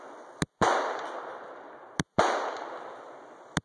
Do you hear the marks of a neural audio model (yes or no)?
no